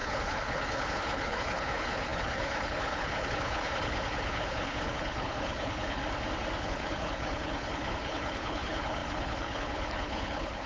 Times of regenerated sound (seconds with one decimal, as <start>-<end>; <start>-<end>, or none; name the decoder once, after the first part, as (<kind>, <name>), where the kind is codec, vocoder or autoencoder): 0.0-6.0 (codec, HILCodec); 6.6-10.7